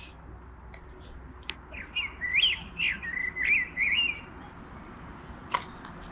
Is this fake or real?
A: real